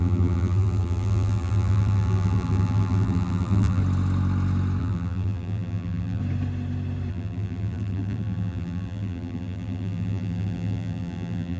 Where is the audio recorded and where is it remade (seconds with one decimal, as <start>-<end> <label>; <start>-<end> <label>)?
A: 0.0-3.8 remade; 3.8-4.8 recorded; 4.8-6.2 remade; 6.2-7.1 recorded; 7.1-11.6 remade